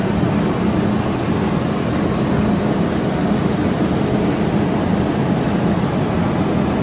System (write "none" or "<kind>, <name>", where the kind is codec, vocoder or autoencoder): none